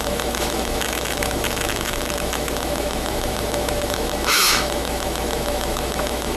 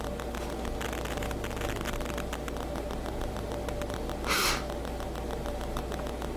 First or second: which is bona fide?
second